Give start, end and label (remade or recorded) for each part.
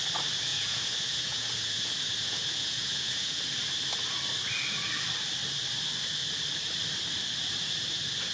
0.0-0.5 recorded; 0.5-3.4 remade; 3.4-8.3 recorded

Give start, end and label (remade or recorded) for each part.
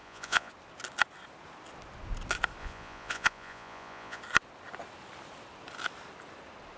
0.0-0.5 remade; 0.5-2.6 recorded; 2.6-4.2 remade; 4.2-6.8 recorded